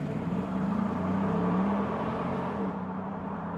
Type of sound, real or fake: fake